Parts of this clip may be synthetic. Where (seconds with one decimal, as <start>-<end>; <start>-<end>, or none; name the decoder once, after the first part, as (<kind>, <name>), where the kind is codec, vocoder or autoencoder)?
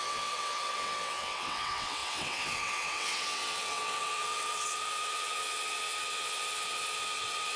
0.0-7.6 (vocoder, WaveNeXt)